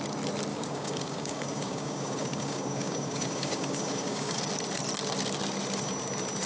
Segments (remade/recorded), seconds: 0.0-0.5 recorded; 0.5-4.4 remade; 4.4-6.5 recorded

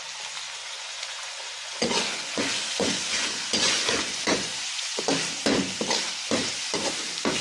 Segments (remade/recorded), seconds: 0.0-0.6 recorded; 0.6-5.0 remade; 5.0-7.4 recorded

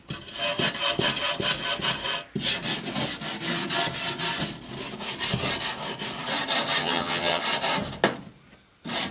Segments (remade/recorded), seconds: 0.0-6.8 recorded; 6.8-7.4 remade; 7.4-9.1 recorded